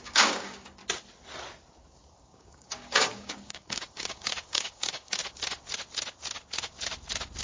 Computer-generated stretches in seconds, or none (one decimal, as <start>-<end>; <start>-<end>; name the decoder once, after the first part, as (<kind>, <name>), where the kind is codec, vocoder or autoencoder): 0.0-0.8 (codec, DAC); 2.2-5.2